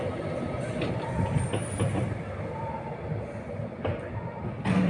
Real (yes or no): yes